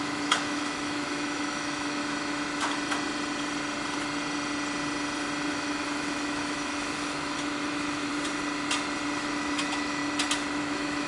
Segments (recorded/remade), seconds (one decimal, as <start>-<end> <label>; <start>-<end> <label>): 0.0-2.0 remade; 2.0-5.5 recorded; 5.5-8.1 remade; 8.1-9.2 recorded; 9.2-10.0 remade; 10.0-10.6 recorded; 10.6-11.1 remade